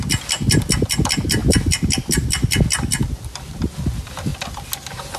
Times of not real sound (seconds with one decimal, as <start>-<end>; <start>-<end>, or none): none

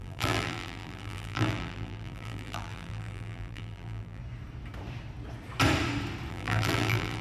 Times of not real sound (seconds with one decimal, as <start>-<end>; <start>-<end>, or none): 0.0-4.2; 6.3-7.2

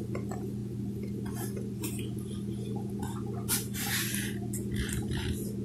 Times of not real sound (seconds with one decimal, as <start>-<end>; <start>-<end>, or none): none